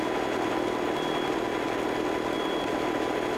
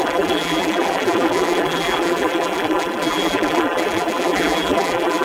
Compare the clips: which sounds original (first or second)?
first